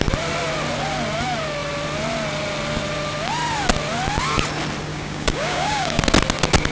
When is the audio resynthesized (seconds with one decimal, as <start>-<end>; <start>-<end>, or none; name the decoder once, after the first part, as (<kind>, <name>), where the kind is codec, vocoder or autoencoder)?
4.9-6.0 (codec, DAC)